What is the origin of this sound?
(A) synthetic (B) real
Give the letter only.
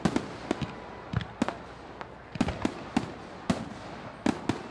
B